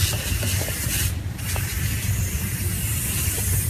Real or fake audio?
real